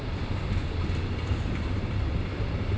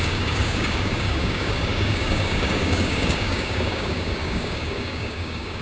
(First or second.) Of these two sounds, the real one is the first